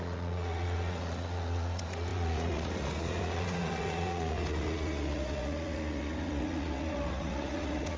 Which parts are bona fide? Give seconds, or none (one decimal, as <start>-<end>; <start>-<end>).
none